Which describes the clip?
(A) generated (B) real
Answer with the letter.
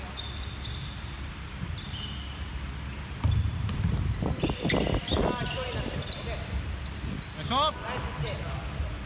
B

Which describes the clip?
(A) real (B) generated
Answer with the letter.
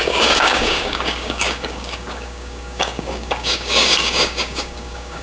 B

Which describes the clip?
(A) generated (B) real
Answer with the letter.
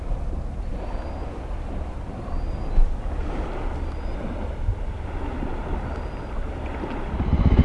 B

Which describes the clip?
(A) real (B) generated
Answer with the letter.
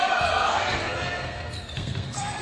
B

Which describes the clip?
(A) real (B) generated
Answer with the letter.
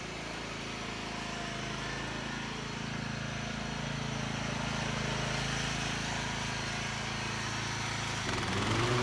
A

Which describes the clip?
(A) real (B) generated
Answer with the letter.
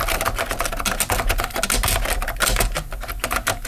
A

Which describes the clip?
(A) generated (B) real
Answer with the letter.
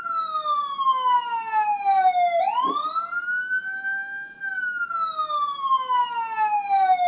B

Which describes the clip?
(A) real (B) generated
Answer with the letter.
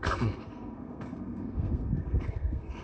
B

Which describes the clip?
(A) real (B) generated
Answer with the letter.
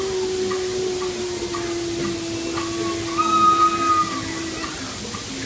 A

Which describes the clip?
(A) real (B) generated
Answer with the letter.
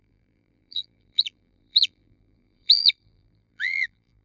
B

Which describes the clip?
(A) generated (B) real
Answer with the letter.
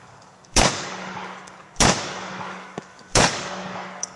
A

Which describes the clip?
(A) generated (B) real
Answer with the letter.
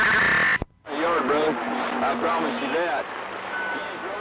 B